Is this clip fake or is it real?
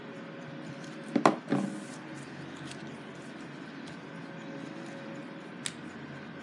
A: real